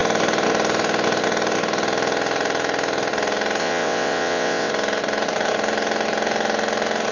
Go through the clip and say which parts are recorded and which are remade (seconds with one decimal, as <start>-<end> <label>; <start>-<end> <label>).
0.0-3.6 recorded; 3.6-4.7 remade; 4.7-7.1 recorded